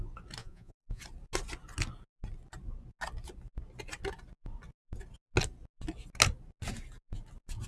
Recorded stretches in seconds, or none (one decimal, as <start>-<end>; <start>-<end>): 0.0-0.4; 1.0-7.7